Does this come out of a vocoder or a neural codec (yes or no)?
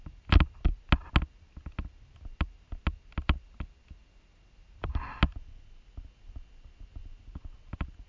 no